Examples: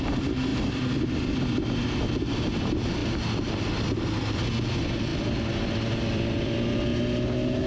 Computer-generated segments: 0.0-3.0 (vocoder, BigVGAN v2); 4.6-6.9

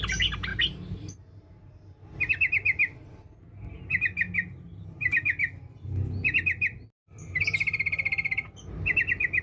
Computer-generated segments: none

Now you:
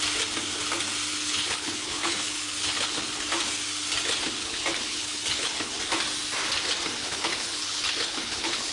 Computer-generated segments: 1.1-3.2 (codec, HILCodec); 4.4-5.7; 7.0-8.7

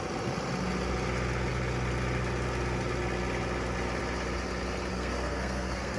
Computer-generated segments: 4.9-6.0 (codec, SNAC)

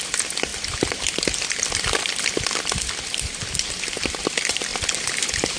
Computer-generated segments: 0.5-2.4 (vocoder, BigVGAN v2); 4.7-5.6

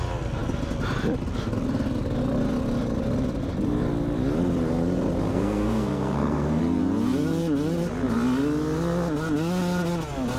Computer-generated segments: 5.3-6.6 (codec, SNAC)